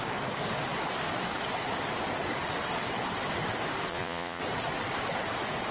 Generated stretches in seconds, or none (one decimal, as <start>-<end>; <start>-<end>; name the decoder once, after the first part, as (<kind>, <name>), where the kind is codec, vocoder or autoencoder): 3.9-4.4 (vocoder, Vocos)